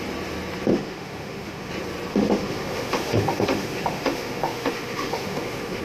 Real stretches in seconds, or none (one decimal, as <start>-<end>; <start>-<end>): 0.0-0.7; 1.7-2.1